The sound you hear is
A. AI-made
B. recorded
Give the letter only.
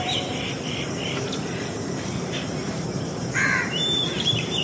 A